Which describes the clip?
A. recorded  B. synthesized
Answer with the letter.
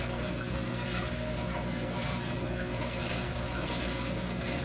B